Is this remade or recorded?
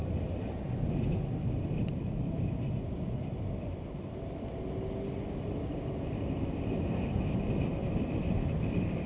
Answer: recorded